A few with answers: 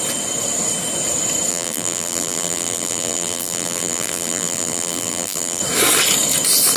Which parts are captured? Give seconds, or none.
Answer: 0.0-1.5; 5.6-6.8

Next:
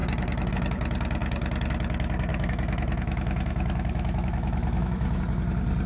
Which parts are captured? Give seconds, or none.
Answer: 0.0-2.3; 5.2-5.9